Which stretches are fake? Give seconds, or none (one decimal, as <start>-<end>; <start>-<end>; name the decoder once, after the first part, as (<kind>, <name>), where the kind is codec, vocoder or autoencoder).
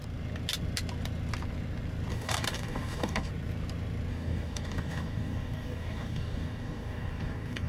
2.1-3.3 (codec, DAC); 4.1-7.7